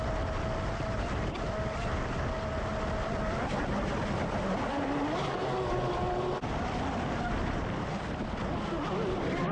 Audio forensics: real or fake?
real